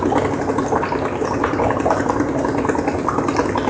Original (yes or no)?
yes